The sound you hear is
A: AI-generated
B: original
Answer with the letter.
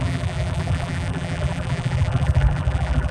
A